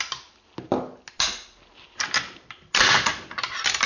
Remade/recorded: recorded